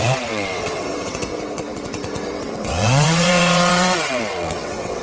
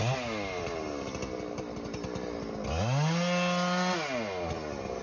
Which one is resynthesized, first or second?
first